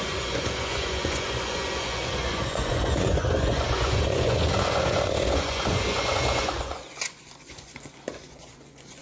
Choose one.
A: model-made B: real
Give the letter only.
A